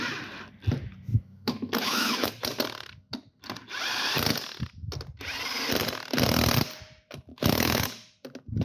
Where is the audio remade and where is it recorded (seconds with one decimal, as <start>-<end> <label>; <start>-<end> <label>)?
0.0-1.1 recorded; 1.1-2.3 remade; 2.3-7.3 recorded; 7.3-7.9 remade; 7.9-8.6 recorded